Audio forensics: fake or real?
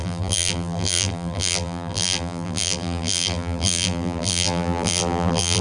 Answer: fake